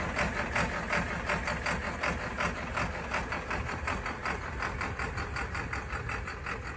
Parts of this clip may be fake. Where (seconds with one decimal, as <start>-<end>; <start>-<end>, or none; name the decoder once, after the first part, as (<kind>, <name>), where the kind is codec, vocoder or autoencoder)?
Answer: none